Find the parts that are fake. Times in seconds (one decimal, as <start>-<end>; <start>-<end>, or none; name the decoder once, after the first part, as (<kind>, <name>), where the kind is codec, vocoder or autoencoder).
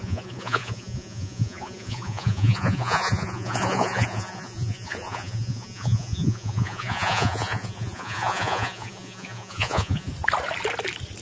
0.0-10.1 (vocoder, Vocos)